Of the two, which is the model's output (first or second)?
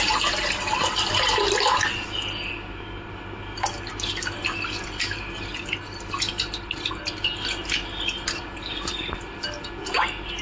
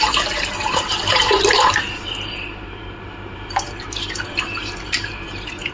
second